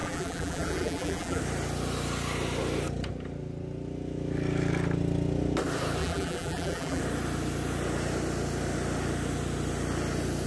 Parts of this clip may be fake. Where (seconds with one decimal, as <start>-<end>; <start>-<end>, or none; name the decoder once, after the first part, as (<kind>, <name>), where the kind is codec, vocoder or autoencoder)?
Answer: 0.0-1.4 (vocoder, BigVGAN v2); 6.0-7.0